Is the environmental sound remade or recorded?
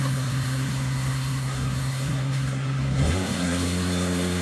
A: remade